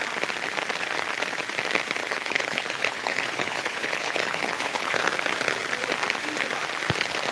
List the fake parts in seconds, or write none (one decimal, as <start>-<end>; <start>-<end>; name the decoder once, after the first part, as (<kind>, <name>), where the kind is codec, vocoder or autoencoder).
2.0-5.0 (codec, HILCodec)